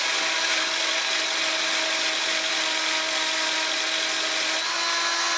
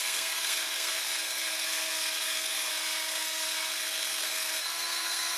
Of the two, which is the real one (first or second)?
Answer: first